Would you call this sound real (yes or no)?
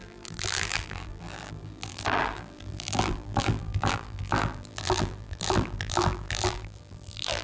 no